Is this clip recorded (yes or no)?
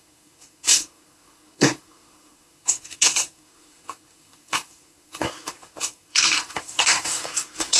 no